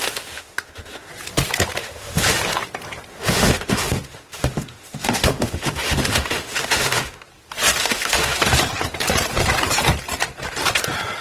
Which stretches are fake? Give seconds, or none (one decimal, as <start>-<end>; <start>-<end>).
0.0-1.1; 1.8-2.4; 3.1-7.2; 7.8-8.4